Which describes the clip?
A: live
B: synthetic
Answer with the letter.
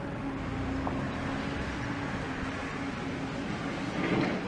A